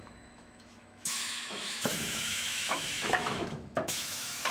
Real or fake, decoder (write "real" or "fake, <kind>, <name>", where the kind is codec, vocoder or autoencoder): fake, autoencoder, DAC-VAE